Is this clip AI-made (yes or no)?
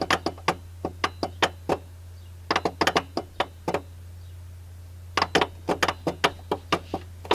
no